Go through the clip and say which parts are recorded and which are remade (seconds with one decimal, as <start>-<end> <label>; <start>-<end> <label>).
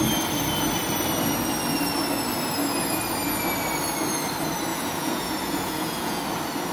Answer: 0.0-4.7 recorded; 4.7-6.2 remade; 6.2-6.7 recorded